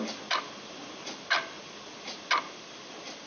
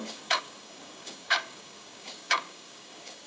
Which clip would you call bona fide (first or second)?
first